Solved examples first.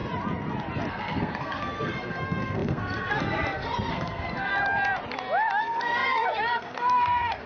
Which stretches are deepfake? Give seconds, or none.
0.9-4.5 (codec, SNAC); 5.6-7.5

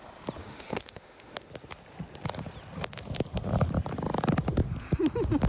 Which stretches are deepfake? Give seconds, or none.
0.4-1.5 (autoencoder, DAC-VAE)